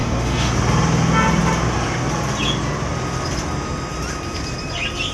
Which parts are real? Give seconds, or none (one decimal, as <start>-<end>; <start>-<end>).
0.5-5.1

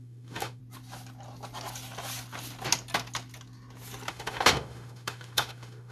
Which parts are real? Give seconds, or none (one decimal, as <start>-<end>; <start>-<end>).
0.6-4.1

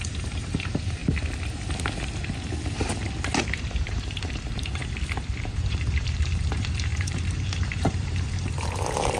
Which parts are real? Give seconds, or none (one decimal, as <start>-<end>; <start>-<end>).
1.0-3.5; 4.8-5.4

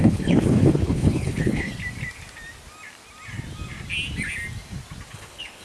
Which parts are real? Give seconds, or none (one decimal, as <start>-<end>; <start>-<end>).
1.7-5.1

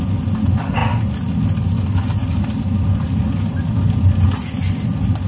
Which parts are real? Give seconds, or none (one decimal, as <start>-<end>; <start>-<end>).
0.0-5.3

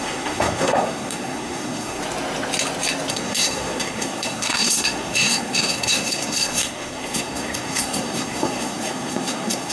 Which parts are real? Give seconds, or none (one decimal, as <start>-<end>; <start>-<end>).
2.0-3.1

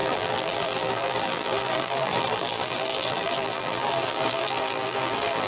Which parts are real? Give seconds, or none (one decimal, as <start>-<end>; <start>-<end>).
none

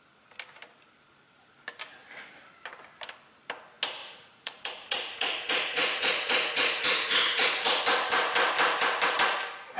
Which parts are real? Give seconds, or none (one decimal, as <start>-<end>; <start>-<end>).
0.0-4.0; 7.8-9.8